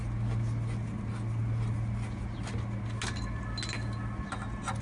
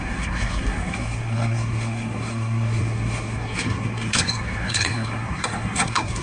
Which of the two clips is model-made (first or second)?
second